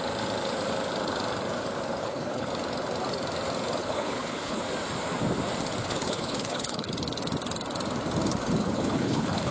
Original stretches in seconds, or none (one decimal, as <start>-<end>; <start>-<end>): 0.0-2.0; 2.5-3.8; 4.6-5.8; 6.9-8.6